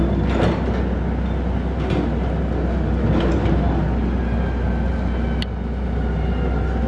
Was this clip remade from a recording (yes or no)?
no